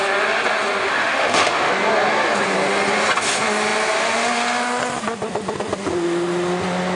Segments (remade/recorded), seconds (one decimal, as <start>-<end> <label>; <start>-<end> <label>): 0.0-0.8 recorded; 0.8-1.7 remade; 1.7-6.9 recorded